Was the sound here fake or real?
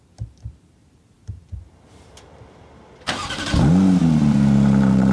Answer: fake